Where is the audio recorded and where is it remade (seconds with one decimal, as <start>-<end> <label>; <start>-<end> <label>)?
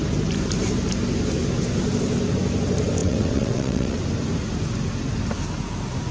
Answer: 0.0-3.0 recorded; 3.0-4.0 remade; 4.0-6.1 recorded